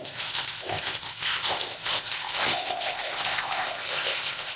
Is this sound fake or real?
fake